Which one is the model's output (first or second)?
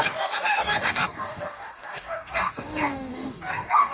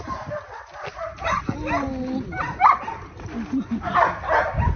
first